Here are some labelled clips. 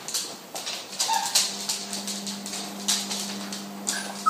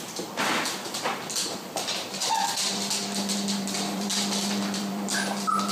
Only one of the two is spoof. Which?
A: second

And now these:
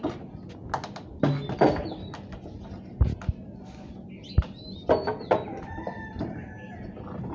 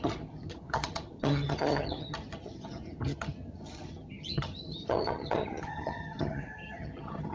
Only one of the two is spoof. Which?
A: second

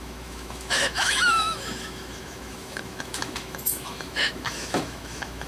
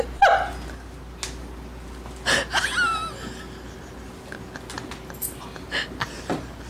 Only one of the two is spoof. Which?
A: first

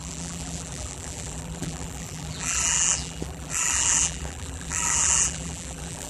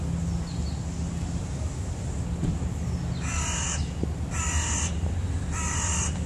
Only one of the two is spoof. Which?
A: first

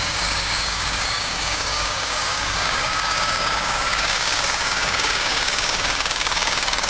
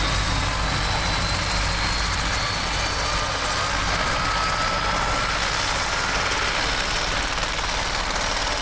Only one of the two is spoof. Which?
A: first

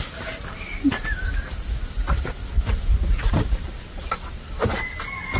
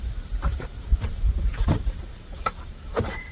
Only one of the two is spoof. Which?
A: second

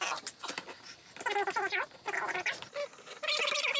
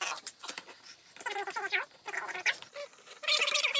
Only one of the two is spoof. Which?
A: second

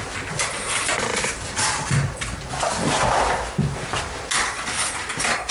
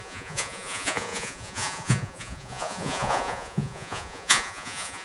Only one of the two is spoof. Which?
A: second